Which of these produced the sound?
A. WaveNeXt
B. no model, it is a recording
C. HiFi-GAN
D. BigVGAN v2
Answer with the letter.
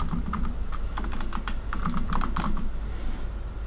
B